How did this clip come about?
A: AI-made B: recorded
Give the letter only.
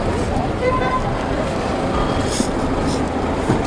A